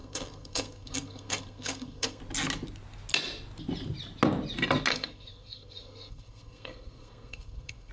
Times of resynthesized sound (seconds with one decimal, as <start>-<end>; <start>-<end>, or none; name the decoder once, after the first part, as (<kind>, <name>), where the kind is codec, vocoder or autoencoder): 0.0-2.2 (codec, SNAC); 4.9-7.9